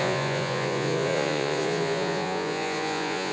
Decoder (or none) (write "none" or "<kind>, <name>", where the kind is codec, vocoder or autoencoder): vocoder, Vocos